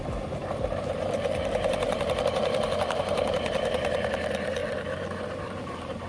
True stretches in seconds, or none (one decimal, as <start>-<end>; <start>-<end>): 0.0-0.4; 4.1-6.1